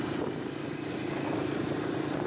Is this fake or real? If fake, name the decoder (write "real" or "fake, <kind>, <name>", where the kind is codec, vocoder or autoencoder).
real